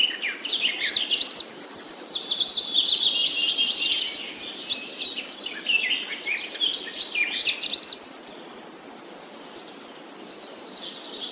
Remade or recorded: recorded